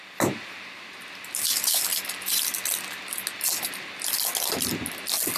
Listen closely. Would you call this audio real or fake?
real